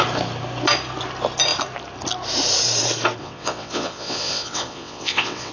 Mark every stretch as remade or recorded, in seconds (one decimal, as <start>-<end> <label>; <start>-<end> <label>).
0.0-3.2 recorded; 3.2-5.5 remade